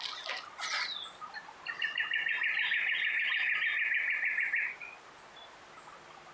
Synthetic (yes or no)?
no